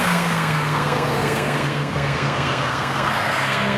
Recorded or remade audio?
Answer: remade